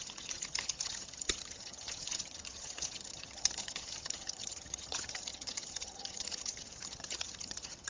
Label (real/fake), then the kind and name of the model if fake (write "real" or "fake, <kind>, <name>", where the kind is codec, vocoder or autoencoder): fake, vocoder, HiFi-GAN